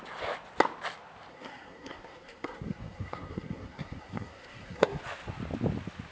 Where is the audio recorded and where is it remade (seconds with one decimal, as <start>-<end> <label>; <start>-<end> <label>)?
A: 0.0-1.3 recorded; 1.3-5.0 remade; 5.0-6.1 recorded